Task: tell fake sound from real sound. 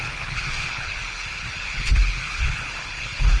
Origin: fake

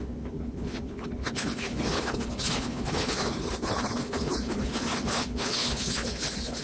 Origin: fake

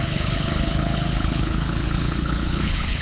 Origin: fake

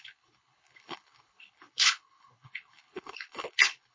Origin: fake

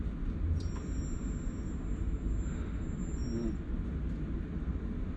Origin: real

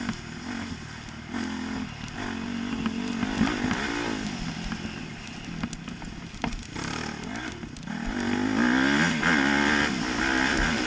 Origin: real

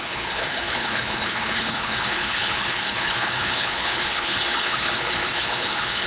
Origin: fake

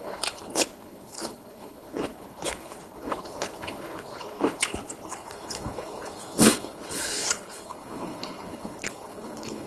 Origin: fake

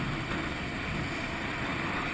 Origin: real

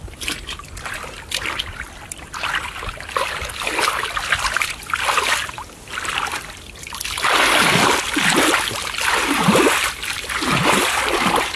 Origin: real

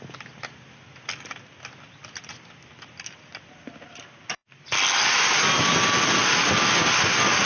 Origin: real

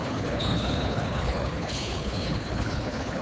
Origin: fake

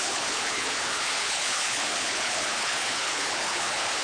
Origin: fake